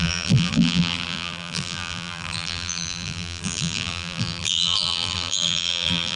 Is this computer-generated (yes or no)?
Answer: yes